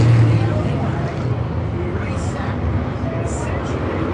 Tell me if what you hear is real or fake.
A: real